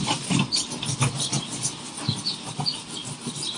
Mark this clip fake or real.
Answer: real